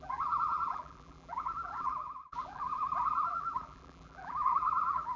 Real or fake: fake